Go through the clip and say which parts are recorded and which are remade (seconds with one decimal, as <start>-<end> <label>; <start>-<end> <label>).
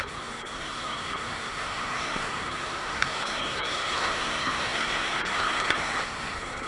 0.0-6.7 remade